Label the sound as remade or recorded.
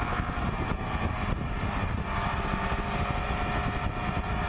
recorded